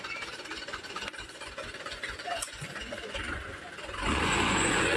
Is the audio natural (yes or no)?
no